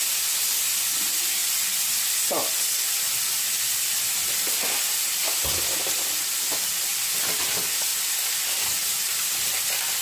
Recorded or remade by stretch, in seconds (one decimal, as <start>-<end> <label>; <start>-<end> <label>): 0.0-10.0 recorded

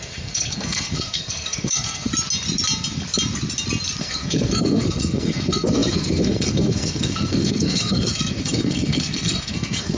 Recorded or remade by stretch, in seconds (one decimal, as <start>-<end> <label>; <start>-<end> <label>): 0.0-2.1 remade; 2.1-4.0 recorded; 4.0-10.0 remade

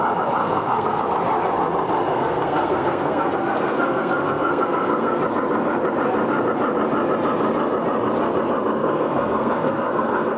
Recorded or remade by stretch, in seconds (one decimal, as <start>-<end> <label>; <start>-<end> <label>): 0.0-0.4 recorded; 0.4-1.0 remade; 1.0-2.1 recorded; 2.1-5.2 remade; 5.2-8.8 recorded; 8.8-10.4 remade

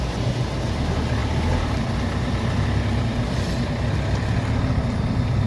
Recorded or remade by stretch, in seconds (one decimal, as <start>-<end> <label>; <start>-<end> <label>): 0.0-5.5 recorded

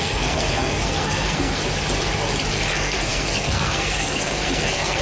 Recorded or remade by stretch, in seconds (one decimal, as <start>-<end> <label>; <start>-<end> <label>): 0.0-1.6 remade; 1.6-2.5 recorded; 2.5-5.0 remade